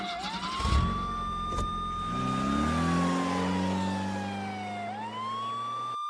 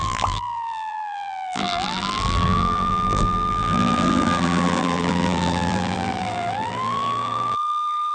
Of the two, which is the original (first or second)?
first